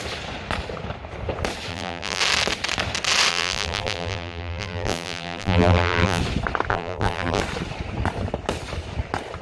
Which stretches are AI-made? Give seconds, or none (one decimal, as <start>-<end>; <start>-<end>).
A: 1.7-2.2; 3.3-6.2; 6.7-7.4